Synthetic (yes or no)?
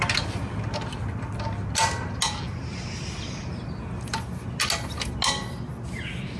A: no